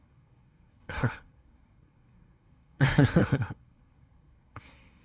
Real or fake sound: fake